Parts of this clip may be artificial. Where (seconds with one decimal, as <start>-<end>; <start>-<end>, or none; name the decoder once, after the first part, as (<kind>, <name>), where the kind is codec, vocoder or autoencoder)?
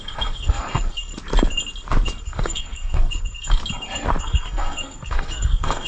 0.0-1.1 (codec, SNAC); 2.2-3.6; 4.2-5.9